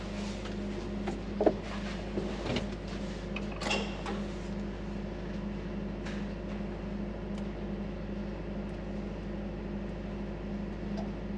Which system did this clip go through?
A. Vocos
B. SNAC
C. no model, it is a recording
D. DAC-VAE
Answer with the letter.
C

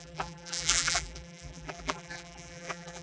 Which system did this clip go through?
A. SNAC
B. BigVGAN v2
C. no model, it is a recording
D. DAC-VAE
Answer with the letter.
B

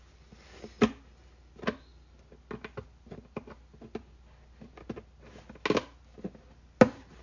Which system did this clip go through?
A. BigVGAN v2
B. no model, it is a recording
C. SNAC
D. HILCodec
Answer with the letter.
B